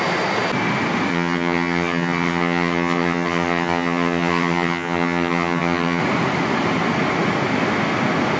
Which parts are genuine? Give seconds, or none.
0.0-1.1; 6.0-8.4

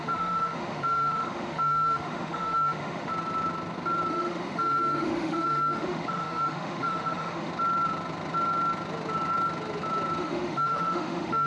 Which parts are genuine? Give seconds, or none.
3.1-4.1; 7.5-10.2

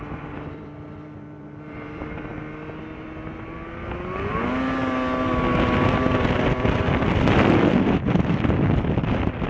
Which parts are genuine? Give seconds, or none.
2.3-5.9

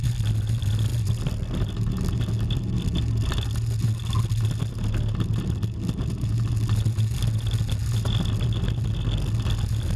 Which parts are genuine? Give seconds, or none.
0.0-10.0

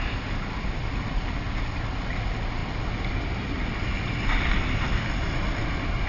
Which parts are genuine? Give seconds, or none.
0.0-6.1